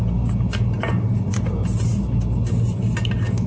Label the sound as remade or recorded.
recorded